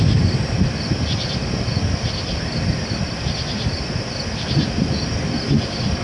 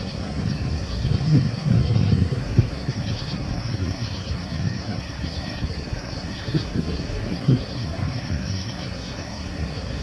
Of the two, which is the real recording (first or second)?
first